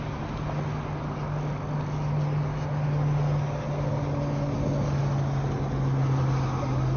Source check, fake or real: real